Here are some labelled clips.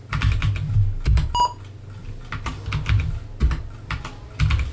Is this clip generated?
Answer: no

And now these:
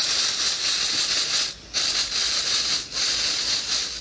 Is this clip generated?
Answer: no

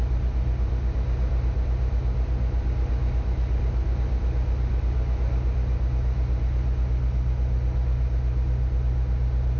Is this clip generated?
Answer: no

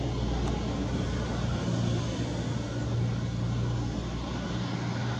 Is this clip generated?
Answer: no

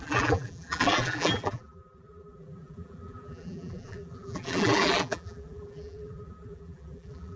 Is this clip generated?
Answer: yes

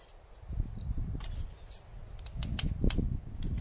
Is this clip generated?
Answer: no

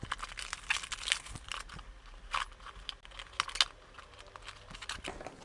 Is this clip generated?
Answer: no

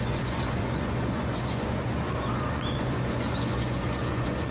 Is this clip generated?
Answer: yes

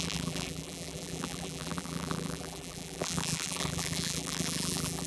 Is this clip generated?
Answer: yes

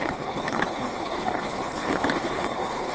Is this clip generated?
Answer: yes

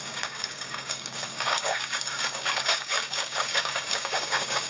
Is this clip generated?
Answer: yes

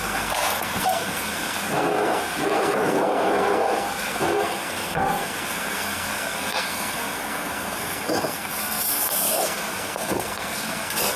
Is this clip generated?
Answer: yes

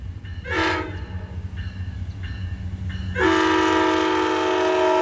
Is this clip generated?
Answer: no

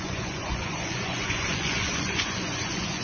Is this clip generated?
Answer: yes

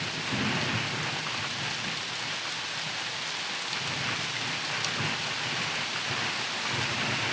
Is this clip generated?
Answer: no